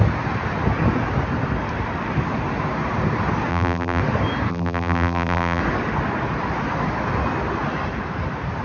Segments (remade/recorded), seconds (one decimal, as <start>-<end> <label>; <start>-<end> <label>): 0.0-3.5 recorded; 3.5-4.0 remade; 4.0-4.5 recorded; 4.5-5.6 remade; 5.6-8.6 recorded